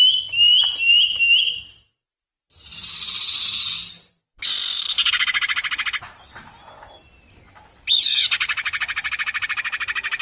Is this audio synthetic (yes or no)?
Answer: no